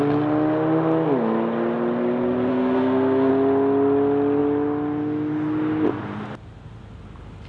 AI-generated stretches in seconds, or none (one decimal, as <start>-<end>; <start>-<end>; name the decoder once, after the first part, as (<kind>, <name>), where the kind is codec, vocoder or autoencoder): 2.5-3.3 (codec, SNAC)